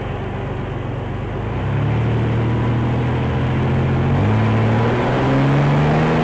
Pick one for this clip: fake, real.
real